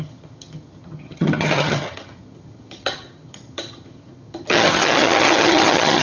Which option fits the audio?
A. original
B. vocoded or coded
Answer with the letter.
B